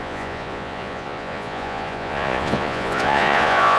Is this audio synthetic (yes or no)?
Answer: yes